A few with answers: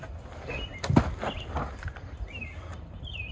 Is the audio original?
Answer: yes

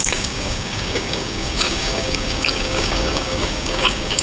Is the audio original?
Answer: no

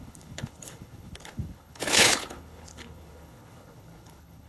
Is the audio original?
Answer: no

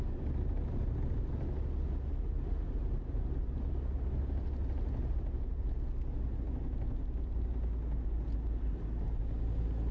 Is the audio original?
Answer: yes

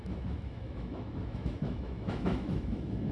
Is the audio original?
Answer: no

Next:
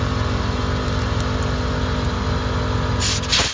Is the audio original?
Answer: yes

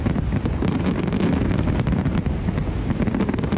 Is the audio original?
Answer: yes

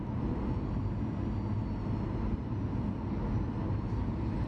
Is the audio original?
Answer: yes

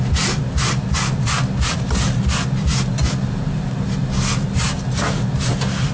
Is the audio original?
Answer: yes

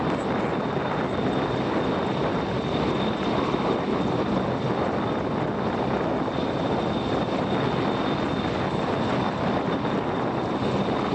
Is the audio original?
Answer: yes